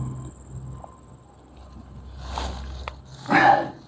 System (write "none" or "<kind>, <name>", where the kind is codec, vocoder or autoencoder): none